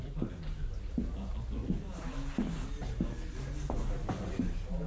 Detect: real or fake real